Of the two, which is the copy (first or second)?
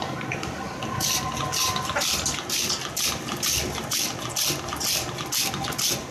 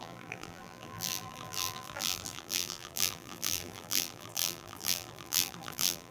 second